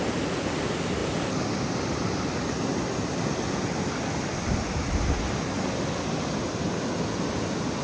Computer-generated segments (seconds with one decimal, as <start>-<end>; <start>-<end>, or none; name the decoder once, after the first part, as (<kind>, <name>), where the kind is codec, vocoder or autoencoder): none